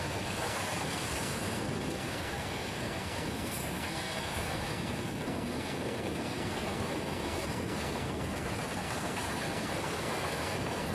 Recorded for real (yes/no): no